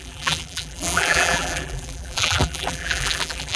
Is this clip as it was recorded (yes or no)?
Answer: no